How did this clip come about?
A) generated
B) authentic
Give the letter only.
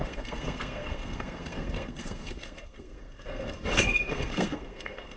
A